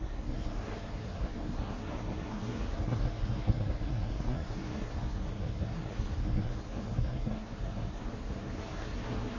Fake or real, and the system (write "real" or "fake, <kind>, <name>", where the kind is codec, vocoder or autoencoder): fake, codec, SNAC